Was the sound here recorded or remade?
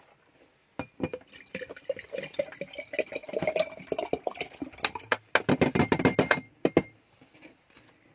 recorded